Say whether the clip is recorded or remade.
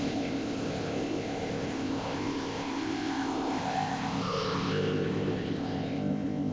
remade